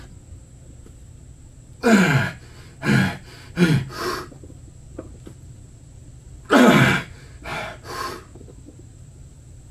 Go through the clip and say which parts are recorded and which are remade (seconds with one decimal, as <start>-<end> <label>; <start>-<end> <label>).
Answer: 0.0-7.5 recorded; 7.5-9.2 remade; 9.2-9.7 recorded